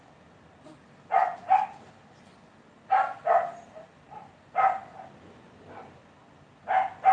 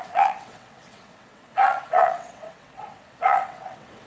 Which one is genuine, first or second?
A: first